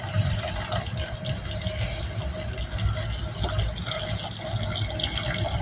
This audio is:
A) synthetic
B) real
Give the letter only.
B